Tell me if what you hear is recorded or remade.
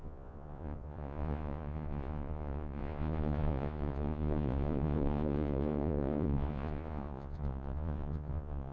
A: remade